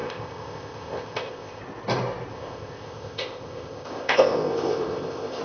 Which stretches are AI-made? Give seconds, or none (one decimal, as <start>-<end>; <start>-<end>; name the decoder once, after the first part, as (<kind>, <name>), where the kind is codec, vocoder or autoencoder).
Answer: 0.0-1.6 (codec, ZipCodec); 2.3-5.4